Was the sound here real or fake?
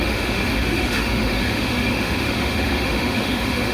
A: fake